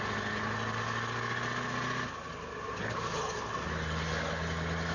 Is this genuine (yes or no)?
yes